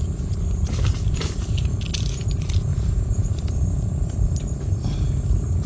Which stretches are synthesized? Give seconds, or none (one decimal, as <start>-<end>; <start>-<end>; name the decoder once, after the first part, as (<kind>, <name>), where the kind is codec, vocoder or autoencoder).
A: 0.9-1.7 (vocoder, BigVGAN v2); 2.7-3.4